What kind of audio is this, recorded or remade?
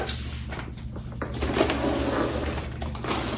recorded